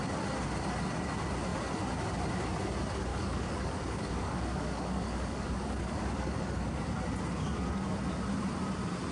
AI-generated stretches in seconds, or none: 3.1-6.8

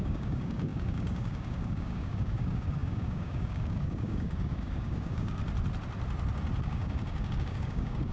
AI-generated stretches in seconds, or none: 0.0-5.4; 6.6-8.1